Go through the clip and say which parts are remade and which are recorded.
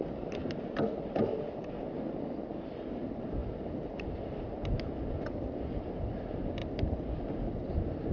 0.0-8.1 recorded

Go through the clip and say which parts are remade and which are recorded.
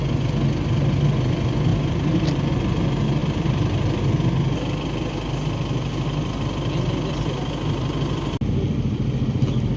0.0-1.7 recorded; 1.7-2.5 remade; 2.5-3.2 recorded; 3.2-4.0 remade; 4.0-9.8 recorded